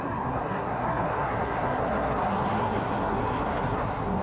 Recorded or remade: remade